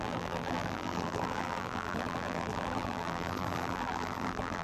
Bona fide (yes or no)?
no